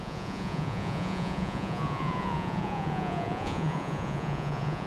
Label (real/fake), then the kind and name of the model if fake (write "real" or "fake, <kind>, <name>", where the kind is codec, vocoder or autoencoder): fake, vocoder, Vocos